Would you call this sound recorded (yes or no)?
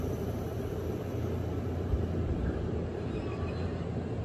no